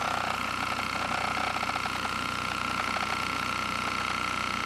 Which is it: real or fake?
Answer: fake